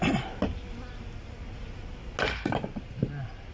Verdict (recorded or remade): recorded